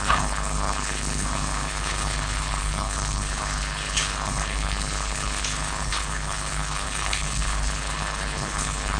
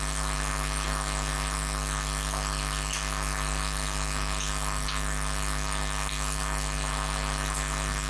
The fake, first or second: first